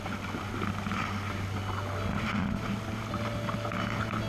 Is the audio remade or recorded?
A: recorded